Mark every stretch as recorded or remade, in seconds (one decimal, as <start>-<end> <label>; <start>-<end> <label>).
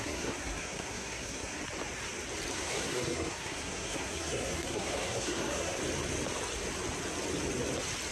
0.0-1.6 remade; 1.6-2.5 recorded; 2.5-5.8 remade; 5.8-8.1 recorded